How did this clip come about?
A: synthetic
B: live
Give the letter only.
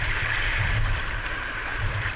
A